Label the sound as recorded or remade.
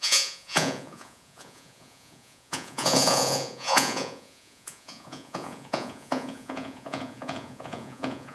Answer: remade